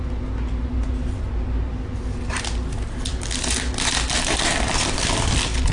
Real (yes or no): yes